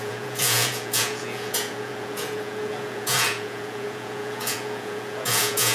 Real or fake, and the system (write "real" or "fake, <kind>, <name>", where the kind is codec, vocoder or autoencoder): fake, vocoder, Vocos